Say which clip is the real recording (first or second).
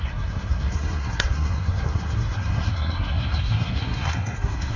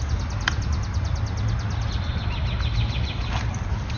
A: second